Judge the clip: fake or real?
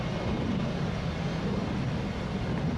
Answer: real